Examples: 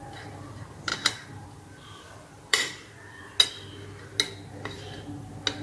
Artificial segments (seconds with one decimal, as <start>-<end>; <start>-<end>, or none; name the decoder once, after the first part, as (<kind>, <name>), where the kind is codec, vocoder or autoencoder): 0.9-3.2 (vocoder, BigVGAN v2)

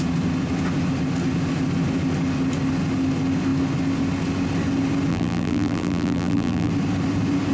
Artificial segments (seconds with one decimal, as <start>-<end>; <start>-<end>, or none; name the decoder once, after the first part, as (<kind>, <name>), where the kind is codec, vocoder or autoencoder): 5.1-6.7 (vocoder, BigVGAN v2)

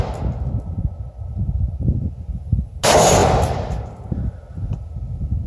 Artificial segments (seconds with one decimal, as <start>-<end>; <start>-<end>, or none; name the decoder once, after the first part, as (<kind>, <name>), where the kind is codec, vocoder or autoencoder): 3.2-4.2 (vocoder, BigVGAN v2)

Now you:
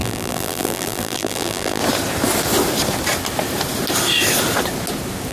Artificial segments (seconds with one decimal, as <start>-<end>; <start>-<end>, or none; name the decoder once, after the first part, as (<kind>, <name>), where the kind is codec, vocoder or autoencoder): 0.0-1.8 (vocoder, BigVGAN v2)

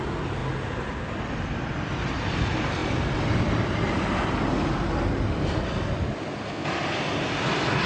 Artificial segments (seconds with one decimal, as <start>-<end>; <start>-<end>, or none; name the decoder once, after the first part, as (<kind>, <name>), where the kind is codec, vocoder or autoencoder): 2.8-3.7 (vocoder, BigVGAN v2)

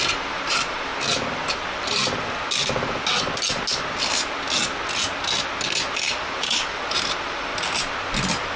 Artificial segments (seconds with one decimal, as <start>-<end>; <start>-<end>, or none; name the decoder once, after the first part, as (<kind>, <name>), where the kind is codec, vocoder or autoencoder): 0.0-0.9 (vocoder, BigVGAN v2); 5.9-7.5

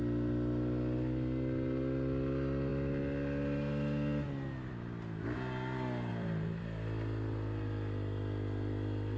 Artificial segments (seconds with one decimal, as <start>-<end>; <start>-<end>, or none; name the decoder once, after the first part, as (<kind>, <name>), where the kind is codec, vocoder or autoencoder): 6.1-6.6 (vocoder, BigVGAN v2)